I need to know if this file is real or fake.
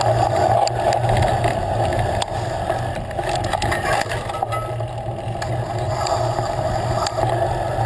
real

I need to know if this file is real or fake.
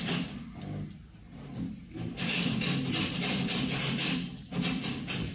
real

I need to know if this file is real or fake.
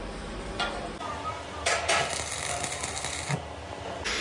real